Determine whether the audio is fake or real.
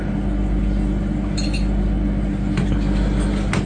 real